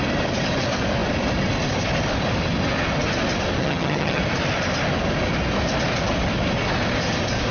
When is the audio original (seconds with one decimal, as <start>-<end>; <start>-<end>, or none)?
0.0-3.6; 4.2-7.5